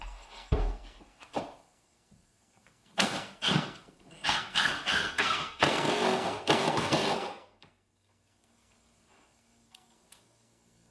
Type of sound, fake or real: fake